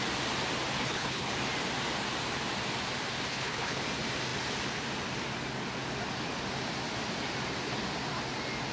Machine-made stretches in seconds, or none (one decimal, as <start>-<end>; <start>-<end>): 0.8-1.3; 3.3-3.8